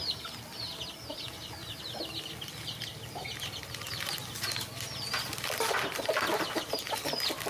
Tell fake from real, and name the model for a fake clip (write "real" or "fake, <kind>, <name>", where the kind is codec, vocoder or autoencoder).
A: real